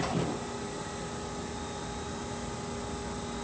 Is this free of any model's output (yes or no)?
yes